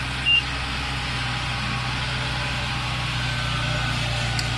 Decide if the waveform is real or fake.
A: real